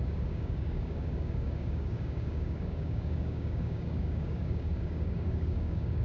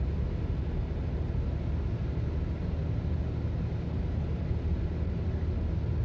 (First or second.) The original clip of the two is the second